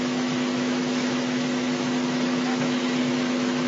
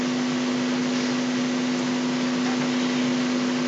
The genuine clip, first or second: second